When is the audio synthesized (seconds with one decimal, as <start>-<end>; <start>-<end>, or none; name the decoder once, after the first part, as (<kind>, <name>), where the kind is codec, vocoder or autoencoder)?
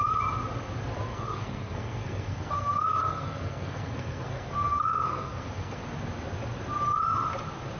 1.1-5.8 (codec, SNAC)